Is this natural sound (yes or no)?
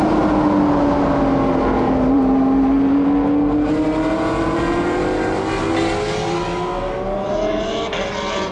yes